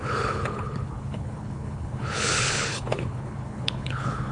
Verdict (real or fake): fake